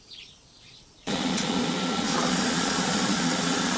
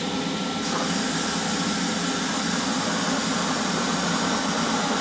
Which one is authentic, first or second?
second